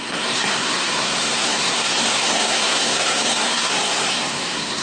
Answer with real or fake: fake